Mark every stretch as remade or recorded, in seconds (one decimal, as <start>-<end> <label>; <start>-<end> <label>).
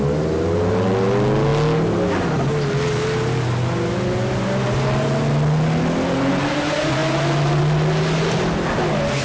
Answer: 0.0-9.2 recorded